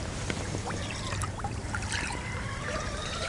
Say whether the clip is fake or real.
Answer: fake